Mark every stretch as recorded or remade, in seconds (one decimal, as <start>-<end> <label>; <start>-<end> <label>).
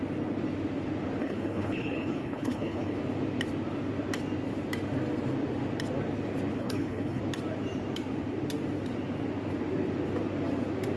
0.0-1.2 recorded; 1.2-3.0 remade; 3.0-6.5 recorded; 6.5-7.2 remade; 7.2-11.0 recorded